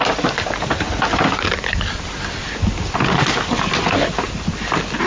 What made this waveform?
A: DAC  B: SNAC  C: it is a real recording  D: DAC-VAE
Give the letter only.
C